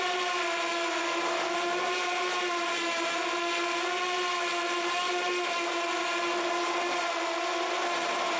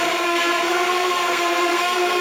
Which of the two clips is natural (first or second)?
first